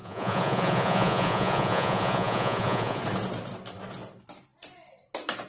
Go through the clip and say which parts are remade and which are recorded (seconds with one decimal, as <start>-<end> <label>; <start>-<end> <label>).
0.0-3.0 remade; 3.0-5.5 recorded